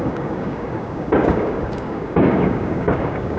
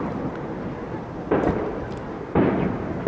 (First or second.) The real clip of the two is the second